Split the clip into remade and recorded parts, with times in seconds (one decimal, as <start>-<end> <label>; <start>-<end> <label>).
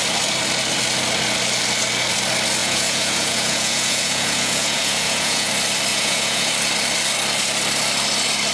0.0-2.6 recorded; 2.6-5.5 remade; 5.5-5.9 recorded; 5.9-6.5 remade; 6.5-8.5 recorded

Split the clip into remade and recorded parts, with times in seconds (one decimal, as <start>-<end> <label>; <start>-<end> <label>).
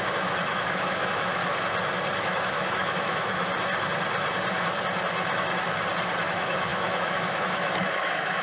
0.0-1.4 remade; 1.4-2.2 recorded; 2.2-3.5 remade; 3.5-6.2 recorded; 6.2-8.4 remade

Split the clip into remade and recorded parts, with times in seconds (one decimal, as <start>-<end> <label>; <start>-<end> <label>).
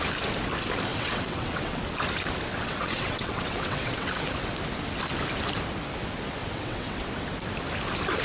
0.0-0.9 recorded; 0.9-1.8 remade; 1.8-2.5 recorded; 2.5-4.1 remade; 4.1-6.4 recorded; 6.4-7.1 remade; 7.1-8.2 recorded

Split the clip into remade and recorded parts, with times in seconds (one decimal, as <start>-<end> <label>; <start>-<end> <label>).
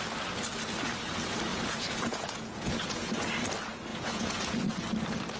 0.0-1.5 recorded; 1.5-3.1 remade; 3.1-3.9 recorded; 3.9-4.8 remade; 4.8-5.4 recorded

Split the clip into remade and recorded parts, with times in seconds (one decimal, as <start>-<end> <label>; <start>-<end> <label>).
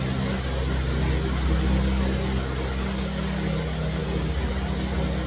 0.0-4.0 recorded; 4.0-4.5 remade; 4.5-5.3 recorded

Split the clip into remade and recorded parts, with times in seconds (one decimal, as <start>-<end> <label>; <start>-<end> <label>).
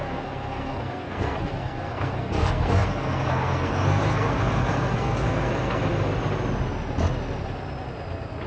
0.0-5.9 remade; 5.9-8.5 recorded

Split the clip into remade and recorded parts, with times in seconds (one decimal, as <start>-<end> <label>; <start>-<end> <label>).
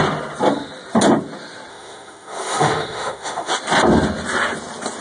0.0-1.7 recorded; 1.7-3.5 remade; 3.5-5.0 recorded